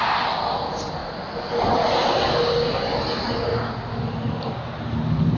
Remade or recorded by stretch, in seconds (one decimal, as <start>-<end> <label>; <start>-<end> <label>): 0.0-5.4 recorded